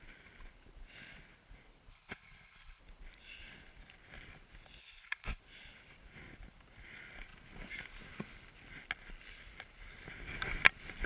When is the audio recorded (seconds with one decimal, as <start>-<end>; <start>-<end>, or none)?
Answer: 0.0-1.9; 2.8-4.8; 5.4-11.1

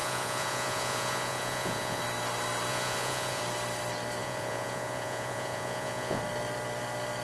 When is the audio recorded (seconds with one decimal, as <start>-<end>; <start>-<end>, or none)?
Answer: 2.0-2.7; 3.4-4.2; 6.2-7.2

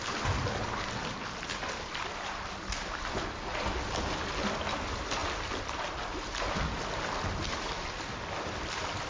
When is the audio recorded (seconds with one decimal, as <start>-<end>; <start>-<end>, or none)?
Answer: 0.0-9.1

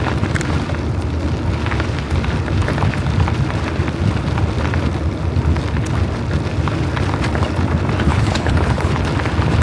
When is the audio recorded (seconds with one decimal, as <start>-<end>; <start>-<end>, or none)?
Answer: 0.0-8.1; 9.0-9.6

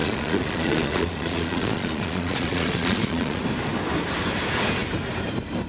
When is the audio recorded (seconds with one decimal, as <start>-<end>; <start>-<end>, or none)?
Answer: 3.4-5.7